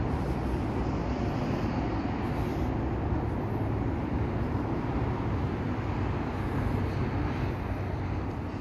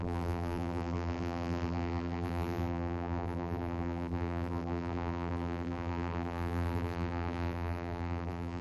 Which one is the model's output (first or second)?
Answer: second